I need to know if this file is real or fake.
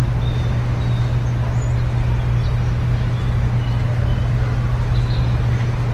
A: real